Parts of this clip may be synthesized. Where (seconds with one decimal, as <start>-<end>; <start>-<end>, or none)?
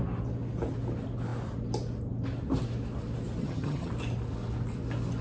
3.4-3.9